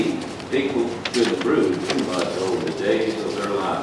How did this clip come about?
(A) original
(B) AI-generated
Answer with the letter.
A